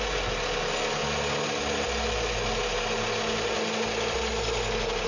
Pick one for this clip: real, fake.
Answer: real